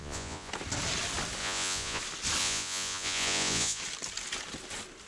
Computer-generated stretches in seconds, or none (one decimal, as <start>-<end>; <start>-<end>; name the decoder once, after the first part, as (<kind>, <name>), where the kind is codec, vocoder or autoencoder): 0.0-0.5 (vocoder, Vocos); 1.4-2.0; 2.4-3.8